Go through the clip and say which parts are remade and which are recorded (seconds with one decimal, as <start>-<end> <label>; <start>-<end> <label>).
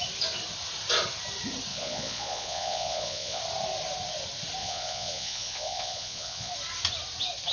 0.0-1.7 recorded; 1.7-3.4 remade; 3.4-4.6 recorded; 4.6-6.5 remade; 6.5-7.5 recorded